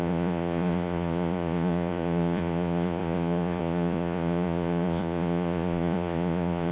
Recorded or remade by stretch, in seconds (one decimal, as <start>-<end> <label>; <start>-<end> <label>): 0.0-6.7 remade

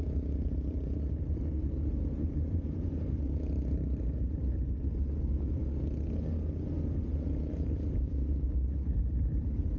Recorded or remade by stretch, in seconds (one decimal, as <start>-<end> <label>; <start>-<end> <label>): 0.0-5.6 remade; 5.6-7.0 recorded; 7.0-9.8 remade